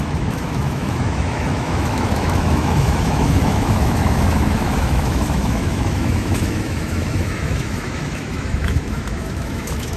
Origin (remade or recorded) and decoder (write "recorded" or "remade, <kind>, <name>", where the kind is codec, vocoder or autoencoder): remade, autoencoder, DAC-VAE